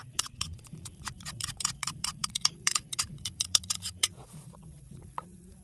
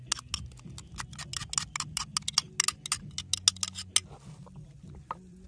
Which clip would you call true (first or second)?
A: second